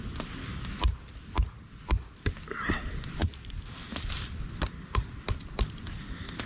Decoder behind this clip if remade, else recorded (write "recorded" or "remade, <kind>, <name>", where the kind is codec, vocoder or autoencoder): recorded